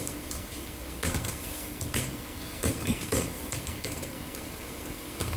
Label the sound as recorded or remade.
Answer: remade